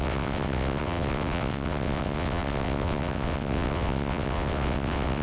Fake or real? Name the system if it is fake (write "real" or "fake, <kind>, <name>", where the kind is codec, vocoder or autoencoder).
fake, vocoder, WaveNeXt